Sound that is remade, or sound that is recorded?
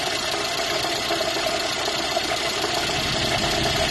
recorded